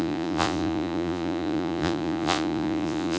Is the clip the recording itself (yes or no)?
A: no